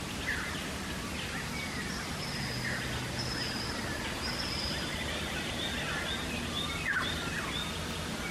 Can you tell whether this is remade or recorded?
recorded